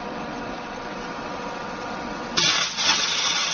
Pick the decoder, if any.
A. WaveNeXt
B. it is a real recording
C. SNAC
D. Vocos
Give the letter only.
A